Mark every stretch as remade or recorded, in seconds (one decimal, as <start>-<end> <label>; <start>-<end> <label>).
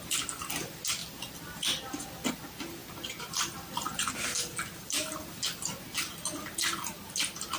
0.0-7.6 recorded